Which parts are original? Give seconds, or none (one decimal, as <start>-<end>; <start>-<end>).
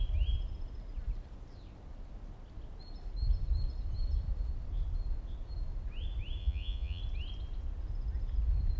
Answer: 0.0-6.4; 7.0-8.8